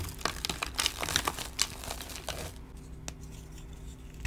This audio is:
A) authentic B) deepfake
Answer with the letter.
A